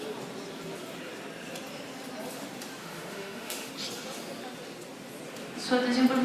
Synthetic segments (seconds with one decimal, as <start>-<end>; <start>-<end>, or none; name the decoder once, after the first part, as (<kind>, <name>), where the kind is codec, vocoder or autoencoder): 2.8-3.7 (autoencoder, DAC-VAE)